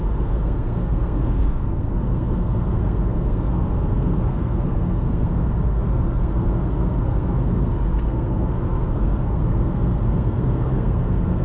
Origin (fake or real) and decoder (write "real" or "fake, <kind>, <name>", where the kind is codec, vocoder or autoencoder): fake, codec, SNAC